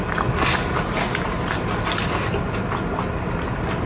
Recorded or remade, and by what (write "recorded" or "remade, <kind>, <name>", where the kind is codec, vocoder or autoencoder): recorded